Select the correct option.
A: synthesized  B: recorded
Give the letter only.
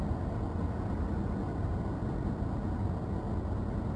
B